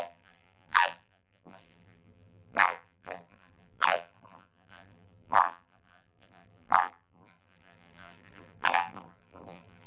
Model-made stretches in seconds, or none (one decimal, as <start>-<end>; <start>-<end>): 0.0-9.9